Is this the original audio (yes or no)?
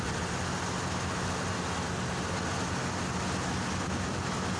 yes